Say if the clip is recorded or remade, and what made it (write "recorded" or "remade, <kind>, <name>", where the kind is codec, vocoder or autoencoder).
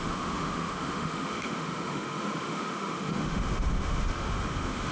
remade, autoencoder, DAC-VAE